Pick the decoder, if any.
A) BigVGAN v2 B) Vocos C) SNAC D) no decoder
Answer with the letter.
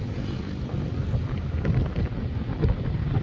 D